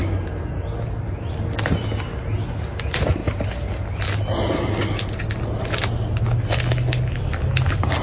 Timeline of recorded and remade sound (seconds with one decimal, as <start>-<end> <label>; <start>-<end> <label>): 0.0-8.0 recorded